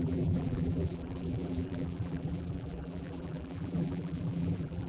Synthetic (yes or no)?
yes